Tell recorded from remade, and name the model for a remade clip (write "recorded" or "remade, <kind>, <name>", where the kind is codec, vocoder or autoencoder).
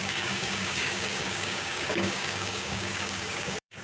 remade, codec, DAC